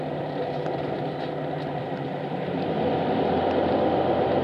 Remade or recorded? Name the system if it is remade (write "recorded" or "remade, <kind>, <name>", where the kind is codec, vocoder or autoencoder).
remade, vocoder, BigVGAN v2